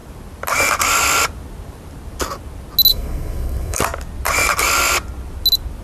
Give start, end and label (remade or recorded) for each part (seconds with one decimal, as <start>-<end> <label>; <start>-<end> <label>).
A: 0.0-2.9 recorded; 2.9-3.8 remade; 3.8-5.8 recorded